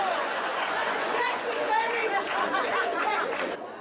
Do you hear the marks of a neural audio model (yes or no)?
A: yes